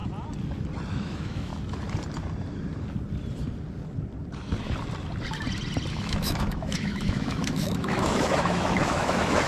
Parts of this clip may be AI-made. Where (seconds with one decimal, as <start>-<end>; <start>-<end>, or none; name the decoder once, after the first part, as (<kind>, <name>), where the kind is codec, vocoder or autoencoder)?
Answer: 0.9-1.5 (autoencoder, DAC-VAE); 5.9-9.5